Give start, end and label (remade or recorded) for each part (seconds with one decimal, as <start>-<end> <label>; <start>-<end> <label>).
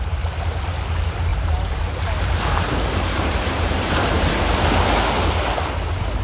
0.0-1.3 recorded; 1.3-4.3 remade; 4.3-6.2 recorded